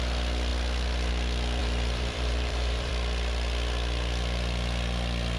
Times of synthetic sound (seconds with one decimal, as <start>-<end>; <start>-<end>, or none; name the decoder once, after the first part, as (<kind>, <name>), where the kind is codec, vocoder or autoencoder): 1.6-2.9 (vocoder, BigVGAN v2)